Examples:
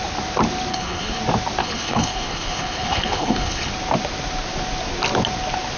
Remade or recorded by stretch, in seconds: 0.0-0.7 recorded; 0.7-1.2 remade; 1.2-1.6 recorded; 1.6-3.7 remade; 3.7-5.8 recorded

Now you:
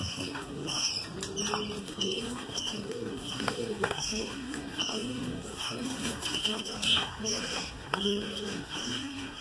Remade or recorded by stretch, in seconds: 0.0-0.9 remade; 0.9-1.8 recorded; 1.8-9.4 remade

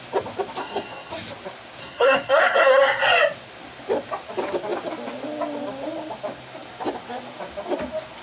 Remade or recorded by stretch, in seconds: 0.0-0.6 recorded; 0.6-1.1 remade; 1.1-1.8 recorded; 1.8-2.8 remade; 2.8-8.2 recorded